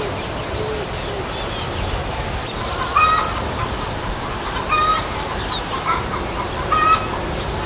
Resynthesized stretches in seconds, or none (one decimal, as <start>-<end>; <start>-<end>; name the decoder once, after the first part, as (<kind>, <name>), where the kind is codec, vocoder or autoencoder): 4.9-5.9 (vocoder, BigVGAN v2)